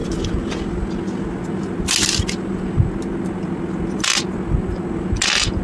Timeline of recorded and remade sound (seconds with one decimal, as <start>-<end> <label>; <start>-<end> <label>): 0.0-5.6 recorded